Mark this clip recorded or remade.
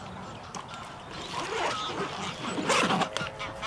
recorded